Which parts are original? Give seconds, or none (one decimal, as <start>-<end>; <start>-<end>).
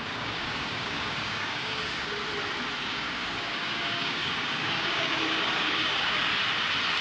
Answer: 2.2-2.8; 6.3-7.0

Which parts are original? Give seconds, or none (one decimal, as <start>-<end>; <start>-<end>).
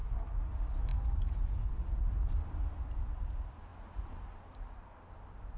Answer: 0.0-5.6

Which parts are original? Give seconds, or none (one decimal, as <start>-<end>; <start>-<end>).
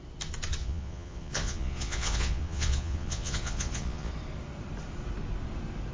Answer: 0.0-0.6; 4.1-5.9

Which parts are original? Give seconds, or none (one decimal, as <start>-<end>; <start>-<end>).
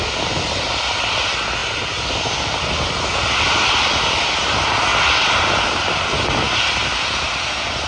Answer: 0.0-7.9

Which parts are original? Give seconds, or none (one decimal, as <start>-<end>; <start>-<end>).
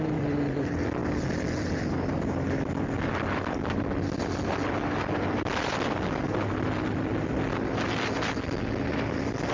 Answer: 0.0-9.5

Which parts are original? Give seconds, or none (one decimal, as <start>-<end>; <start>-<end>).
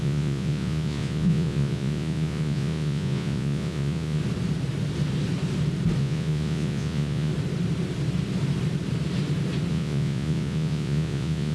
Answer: 4.2-6.0; 7.3-9.7